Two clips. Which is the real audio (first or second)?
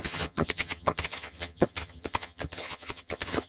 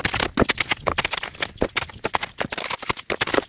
second